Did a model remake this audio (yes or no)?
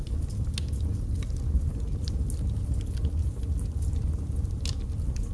no